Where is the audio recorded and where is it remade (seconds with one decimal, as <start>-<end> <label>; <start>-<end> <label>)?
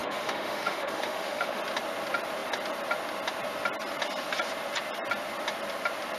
0.0-1.6 remade; 1.6-6.2 recorded